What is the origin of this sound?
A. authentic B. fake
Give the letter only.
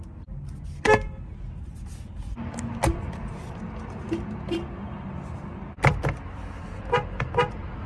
A